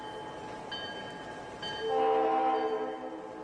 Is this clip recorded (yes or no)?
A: yes